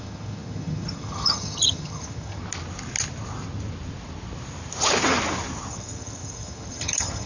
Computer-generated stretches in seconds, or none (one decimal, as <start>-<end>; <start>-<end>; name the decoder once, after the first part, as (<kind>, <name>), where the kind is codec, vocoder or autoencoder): 0.0-2.4 (vocoder, HiFi-GAN); 5.7-7.3